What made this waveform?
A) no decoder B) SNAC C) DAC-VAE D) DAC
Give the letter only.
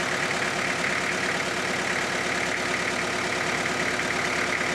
A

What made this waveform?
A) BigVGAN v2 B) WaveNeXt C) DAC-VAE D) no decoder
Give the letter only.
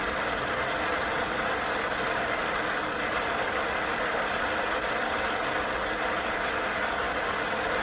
D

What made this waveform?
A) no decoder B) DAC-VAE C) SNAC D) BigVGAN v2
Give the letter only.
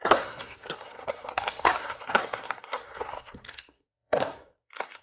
C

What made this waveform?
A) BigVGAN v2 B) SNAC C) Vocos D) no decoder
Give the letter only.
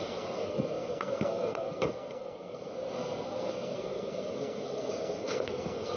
B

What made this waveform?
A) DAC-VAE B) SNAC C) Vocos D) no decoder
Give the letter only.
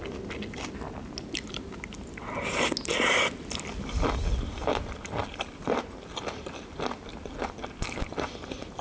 D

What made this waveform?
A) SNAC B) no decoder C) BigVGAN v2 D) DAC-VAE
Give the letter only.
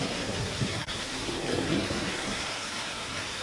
A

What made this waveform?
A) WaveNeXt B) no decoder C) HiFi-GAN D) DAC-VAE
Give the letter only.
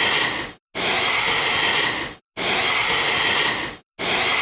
B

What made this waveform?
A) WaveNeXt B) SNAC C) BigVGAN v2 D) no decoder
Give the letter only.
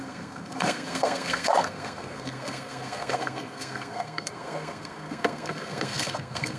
B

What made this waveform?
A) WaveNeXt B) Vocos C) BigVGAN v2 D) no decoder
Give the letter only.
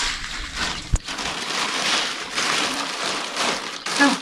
C